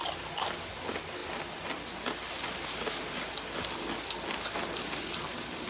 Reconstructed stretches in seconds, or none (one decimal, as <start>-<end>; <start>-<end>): none